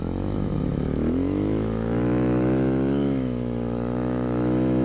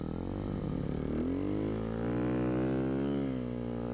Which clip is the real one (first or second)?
second